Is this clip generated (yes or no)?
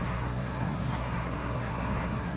yes